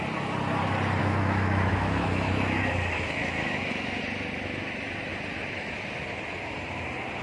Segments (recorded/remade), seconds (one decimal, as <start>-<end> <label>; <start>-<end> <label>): 0.0-1.0 recorded; 1.0-4.0 remade; 4.0-7.2 recorded